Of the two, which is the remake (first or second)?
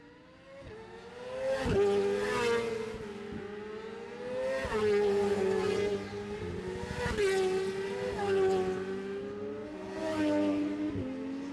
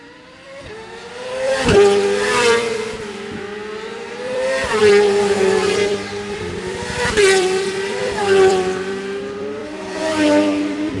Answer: second